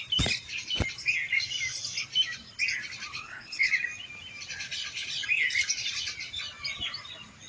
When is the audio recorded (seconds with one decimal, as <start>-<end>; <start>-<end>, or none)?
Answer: 0.0-3.1; 3.7-7.5